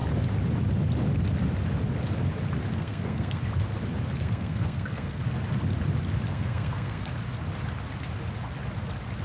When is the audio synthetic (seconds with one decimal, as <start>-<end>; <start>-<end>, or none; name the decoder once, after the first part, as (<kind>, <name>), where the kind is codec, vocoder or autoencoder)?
2.7-3.4 (codec, SNAC); 4.2-5.2; 6.3-7.1

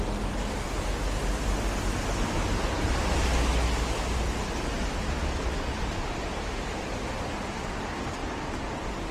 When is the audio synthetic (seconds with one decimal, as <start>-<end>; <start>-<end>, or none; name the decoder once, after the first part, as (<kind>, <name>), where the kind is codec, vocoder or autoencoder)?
none